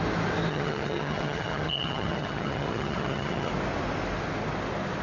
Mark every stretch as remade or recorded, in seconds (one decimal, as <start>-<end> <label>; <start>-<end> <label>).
0.0-0.5 recorded; 0.5-3.5 remade; 3.5-5.0 recorded